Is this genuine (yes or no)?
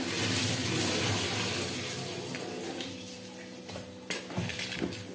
yes